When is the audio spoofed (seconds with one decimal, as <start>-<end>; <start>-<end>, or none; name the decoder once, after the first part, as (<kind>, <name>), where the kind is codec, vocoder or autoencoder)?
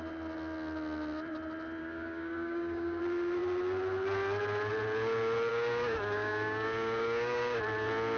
1.8-3.0 (codec, DAC); 5.5-7.6